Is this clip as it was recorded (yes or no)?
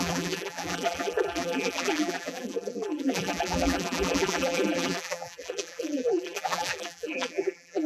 no